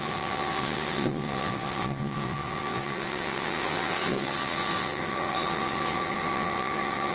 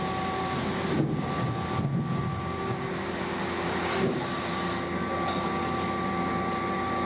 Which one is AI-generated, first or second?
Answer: first